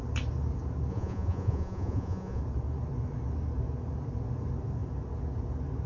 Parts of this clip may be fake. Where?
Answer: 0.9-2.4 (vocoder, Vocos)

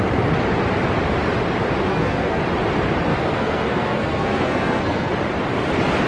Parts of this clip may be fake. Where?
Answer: 1.9-2.4 (codec, SNAC); 3.1-5.1

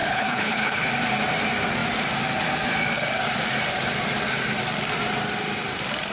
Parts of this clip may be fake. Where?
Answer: 0.0-0.9 (codec, HILCodec)

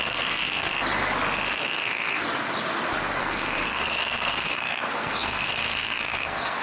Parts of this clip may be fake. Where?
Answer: 0.0-0.7 (codec, SNAC); 1.5-2.2; 3.2-6.6